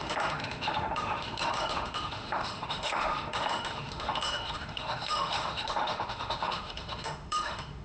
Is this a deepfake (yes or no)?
yes